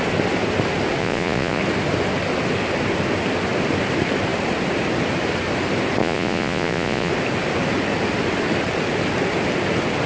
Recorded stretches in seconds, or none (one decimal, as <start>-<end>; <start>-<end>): 0.0-1.0; 1.6-6.0; 7.1-10.1